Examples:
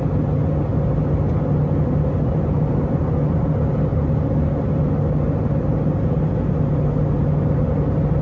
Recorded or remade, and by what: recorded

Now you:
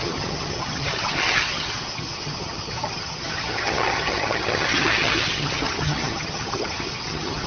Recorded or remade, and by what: remade, vocoder, HiFi-GAN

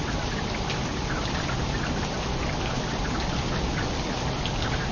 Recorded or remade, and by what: recorded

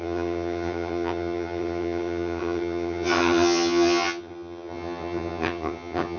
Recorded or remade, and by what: remade, vocoder, HiFi-GAN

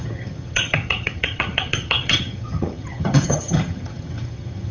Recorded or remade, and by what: remade, vocoder, HiFi-GAN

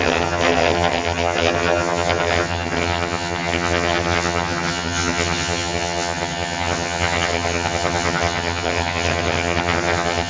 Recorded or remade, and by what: remade, vocoder, HiFi-GAN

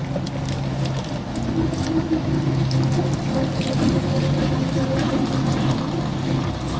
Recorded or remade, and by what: recorded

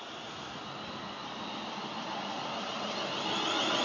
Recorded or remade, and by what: recorded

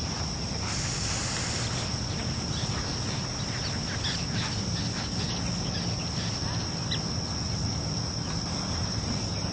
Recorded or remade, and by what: recorded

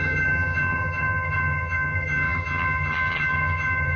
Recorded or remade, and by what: remade, vocoder, HiFi-GAN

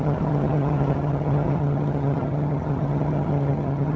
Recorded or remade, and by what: remade, vocoder, HiFi-GAN